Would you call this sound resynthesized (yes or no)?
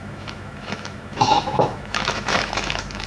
yes